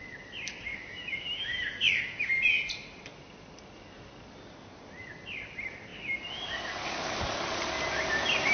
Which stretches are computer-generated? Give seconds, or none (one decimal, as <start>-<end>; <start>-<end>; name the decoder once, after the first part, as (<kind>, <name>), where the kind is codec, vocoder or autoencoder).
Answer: 0.7-2.3 (autoencoder, DAC-VAE)

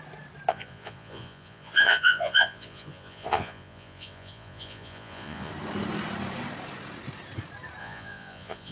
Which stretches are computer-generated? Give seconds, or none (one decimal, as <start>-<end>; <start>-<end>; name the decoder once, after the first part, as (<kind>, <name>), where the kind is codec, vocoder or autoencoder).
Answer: 0.5-5.5 (vocoder, Vocos); 7.8-8.7

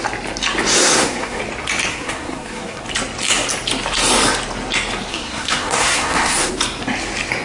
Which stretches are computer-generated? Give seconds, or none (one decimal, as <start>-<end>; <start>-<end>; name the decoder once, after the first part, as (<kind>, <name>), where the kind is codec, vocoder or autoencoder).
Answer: 0.7-1.4 (codec, SNAC); 1.9-2.8; 5.1-6.5

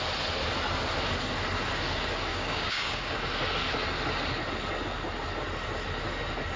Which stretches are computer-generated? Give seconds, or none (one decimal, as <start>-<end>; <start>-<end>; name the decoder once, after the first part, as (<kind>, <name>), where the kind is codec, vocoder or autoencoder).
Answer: 2.3-3.2 (codec, DAC)

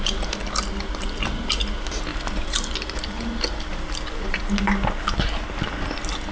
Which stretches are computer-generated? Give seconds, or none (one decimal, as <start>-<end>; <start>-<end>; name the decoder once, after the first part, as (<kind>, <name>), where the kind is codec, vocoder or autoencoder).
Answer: 2.1-2.7 (vocoder, BigVGAN v2); 3.7-4.4